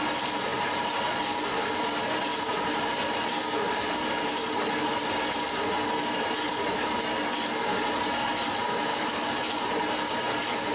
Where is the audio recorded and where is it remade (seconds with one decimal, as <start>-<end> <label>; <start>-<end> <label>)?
0.0-8.9 recorded; 8.9-9.6 remade; 9.6-10.7 recorded